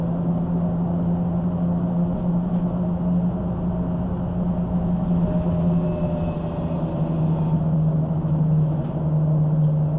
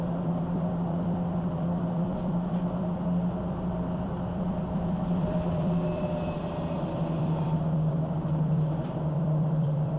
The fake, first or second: second